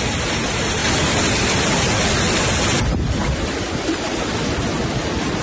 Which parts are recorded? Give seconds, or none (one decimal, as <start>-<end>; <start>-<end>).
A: 0.0-0.8; 4.0-5.4